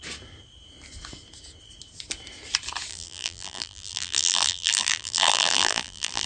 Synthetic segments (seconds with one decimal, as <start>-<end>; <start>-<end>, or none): 2.9-6.3